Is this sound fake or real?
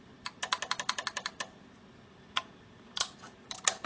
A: real